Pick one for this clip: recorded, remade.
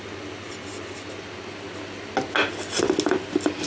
recorded